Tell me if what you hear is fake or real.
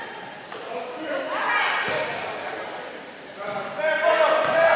real